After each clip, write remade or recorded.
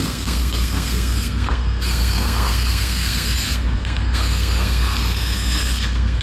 remade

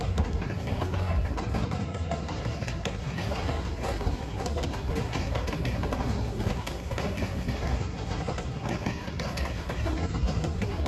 remade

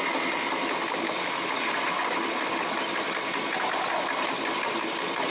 recorded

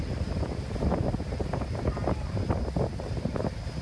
recorded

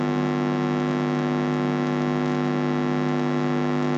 recorded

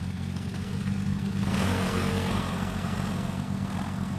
remade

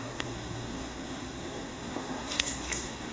remade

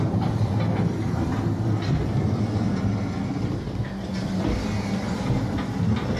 recorded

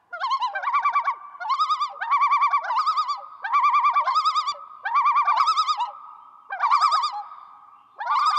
recorded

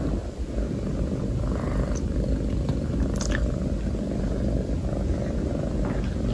recorded